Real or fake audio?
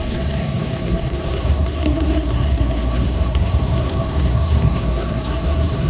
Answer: fake